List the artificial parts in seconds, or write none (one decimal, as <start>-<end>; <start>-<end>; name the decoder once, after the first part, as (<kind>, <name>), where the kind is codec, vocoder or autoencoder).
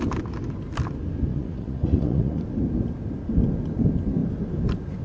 1.3-2.4 (vocoder, Vocos)